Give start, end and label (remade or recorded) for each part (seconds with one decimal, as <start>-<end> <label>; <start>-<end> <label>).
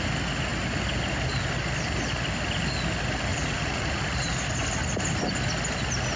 0.0-3.3 recorded; 3.3-4.0 remade; 4.0-6.2 recorded